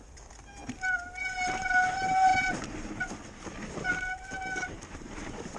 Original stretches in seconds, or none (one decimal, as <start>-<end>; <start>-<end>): 0.6-1.2; 2.3-3.6